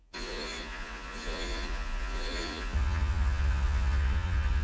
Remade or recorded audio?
remade